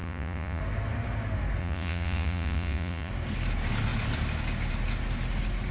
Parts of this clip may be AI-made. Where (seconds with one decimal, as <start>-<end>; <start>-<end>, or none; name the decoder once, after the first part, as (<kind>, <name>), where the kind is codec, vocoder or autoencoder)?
0.0-0.6 (vocoder, Vocos); 1.6-3.1